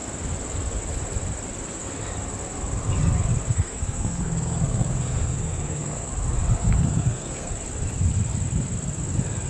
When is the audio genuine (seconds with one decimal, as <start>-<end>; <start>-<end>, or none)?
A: 0.0-3.5; 6.1-6.6; 7.5-9.5